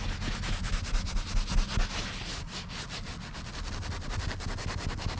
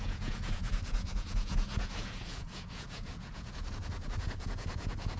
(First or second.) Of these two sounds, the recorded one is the first